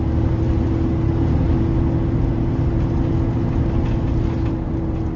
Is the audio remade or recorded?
recorded